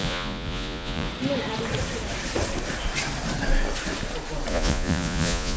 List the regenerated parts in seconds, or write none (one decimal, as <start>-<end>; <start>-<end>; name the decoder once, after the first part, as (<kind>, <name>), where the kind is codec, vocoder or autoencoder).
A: 0.0-1.1 (vocoder, Vocos); 4.5-5.6